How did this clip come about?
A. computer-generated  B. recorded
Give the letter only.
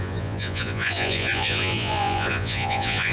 A